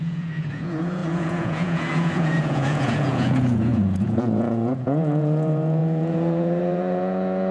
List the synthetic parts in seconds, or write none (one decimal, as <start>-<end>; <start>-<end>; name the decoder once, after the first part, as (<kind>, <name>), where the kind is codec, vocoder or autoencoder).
0.0-7.5 (vocoder, Vocos)